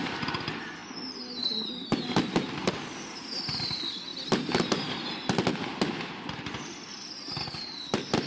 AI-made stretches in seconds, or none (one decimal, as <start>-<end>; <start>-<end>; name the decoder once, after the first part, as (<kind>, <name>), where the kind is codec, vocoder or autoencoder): none

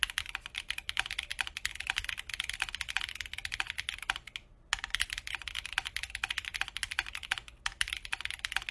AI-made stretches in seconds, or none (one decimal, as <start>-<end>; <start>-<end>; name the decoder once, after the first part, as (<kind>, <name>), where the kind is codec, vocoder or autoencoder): none

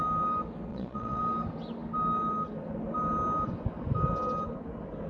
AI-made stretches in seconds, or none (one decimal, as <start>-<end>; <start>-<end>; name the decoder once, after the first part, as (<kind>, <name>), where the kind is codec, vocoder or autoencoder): 0.7-1.2 (vocoder, Vocos)

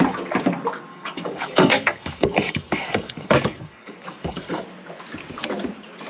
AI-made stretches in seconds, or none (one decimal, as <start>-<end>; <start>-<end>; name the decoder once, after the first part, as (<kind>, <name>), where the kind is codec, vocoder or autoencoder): 0.9-4.6 (codec, DAC)

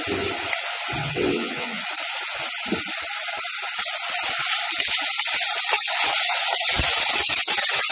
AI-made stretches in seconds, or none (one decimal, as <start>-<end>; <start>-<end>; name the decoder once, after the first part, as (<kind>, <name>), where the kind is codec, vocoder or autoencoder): 1.0-1.8 (vocoder, WaveNeXt)

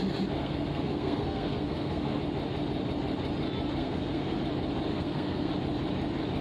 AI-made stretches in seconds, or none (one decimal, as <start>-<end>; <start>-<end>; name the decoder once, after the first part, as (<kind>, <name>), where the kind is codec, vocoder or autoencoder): 0.4-2.2 (codec, SNAC); 3.8-4.4; 4.9-5.5

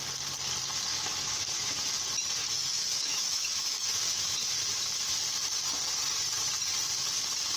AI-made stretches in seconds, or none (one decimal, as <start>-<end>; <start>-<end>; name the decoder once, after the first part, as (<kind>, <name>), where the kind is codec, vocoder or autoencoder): 0.9-1.8 (autoencoder, DAC-VAE); 2.4-4.3

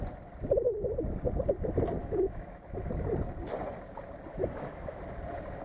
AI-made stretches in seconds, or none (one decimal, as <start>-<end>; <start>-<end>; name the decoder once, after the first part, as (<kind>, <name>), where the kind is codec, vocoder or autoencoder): 2.0-2.9 (autoencoder, DAC-VAE); 4.3-5.0